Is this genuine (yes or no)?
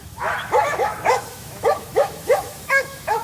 no